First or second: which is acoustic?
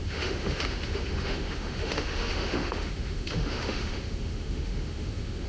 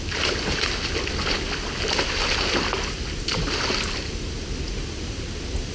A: second